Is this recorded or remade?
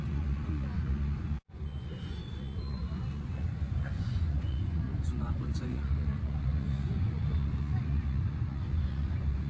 remade